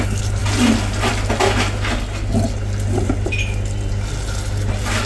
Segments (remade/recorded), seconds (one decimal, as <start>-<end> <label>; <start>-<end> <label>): 0.0-5.1 recorded